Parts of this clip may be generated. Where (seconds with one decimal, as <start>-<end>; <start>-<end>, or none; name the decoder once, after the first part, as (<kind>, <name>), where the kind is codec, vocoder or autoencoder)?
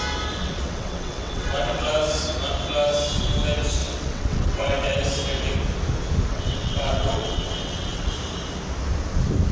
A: 0.4-1.9 (vocoder, WaveNeXt); 3.8-5.0; 6.3-8.1